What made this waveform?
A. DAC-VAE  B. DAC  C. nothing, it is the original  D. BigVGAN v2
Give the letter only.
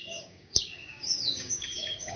B